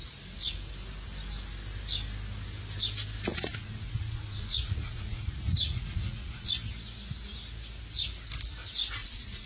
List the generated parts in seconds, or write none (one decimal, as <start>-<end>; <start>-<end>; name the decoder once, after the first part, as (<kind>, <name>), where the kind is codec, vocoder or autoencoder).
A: 3.3-6.5 (vocoder, Vocos); 9.0-9.5